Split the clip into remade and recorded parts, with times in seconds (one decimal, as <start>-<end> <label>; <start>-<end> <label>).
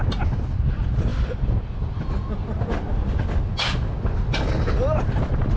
0.0-5.6 recorded